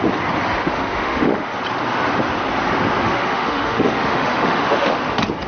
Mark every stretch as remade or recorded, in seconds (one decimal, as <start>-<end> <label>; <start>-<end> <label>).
0.0-0.6 recorded; 0.6-1.6 remade; 1.6-3.0 recorded; 3.0-5.0 remade; 5.0-5.5 recorded

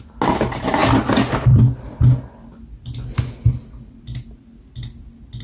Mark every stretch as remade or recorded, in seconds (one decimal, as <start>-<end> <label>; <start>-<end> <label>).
0.0-5.4 recorded

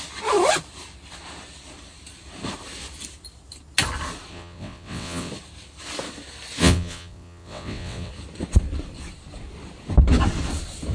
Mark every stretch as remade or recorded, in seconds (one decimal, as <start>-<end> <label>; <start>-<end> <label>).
0.0-4.3 recorded; 4.3-5.3 remade; 5.3-6.6 recorded; 6.6-8.1 remade; 8.1-10.9 recorded

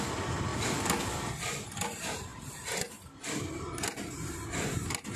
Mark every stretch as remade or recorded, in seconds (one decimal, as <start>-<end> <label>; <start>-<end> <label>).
0.0-5.2 recorded

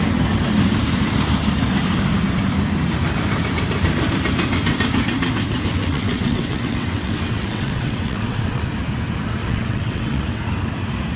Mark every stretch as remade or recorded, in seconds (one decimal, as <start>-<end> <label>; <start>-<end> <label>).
0.0-5.7 recorded; 5.7-8.6 remade; 8.6-9.4 recorded; 9.4-10.4 remade; 10.4-11.2 recorded